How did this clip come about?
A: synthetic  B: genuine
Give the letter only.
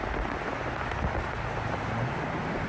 B